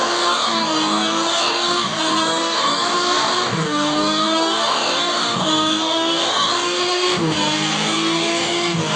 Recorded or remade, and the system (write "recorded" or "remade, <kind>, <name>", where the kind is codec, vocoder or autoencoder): remade, codec, DAC